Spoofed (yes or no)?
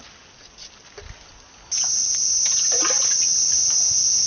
no